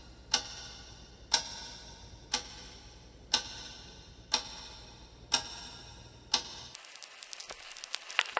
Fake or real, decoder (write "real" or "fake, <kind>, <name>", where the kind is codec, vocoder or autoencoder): real